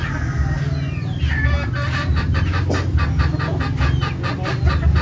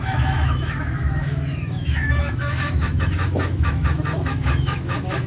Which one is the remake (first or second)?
second